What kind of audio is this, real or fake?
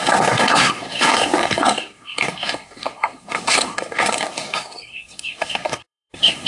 fake